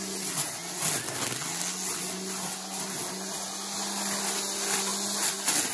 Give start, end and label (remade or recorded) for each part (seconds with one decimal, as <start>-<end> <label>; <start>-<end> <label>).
0.0-5.7 recorded